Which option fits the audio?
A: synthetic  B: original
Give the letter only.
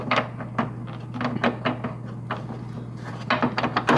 B